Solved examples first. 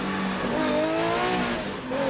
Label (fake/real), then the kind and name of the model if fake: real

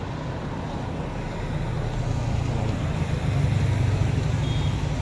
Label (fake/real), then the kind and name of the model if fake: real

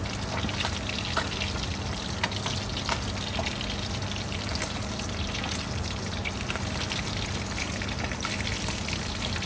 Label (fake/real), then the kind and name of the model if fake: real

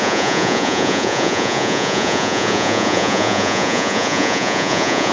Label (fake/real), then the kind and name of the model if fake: fake, vocoder, Vocos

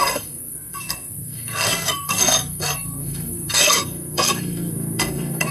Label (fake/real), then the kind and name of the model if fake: fake, codec, SNAC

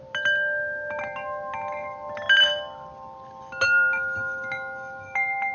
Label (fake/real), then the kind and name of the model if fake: real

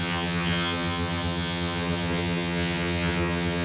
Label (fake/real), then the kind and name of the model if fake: fake, vocoder, HiFi-GAN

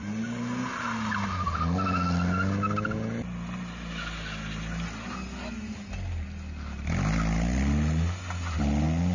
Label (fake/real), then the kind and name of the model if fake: real